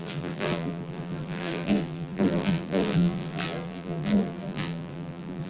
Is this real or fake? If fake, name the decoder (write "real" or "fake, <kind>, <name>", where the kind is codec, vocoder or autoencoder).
fake, vocoder, BigVGAN v2